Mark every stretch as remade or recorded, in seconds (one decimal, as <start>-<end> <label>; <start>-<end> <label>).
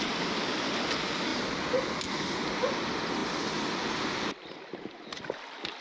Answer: 0.0-5.8 recorded